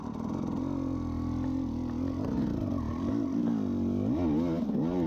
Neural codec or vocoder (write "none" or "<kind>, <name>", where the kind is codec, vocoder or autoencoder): none